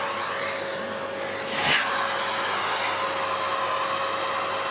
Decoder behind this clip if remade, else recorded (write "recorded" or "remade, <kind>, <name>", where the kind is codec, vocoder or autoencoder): recorded